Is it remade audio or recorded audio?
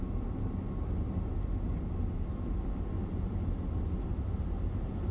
recorded